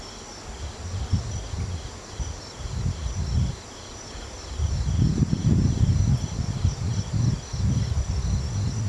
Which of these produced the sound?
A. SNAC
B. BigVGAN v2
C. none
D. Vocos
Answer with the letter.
C